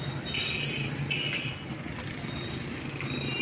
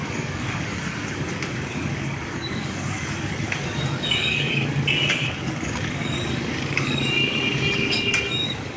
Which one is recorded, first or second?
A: first